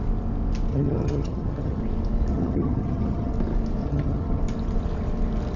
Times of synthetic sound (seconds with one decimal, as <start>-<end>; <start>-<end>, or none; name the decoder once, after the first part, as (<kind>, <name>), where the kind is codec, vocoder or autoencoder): 0.7-1.8 (vocoder, HiFi-GAN); 2.3-3.3; 3.8-4.4